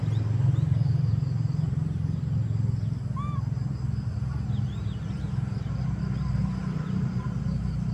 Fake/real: real